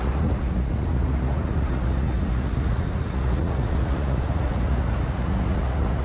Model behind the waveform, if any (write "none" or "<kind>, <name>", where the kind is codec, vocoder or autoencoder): vocoder, Vocos